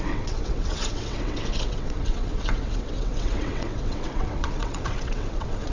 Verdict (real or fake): fake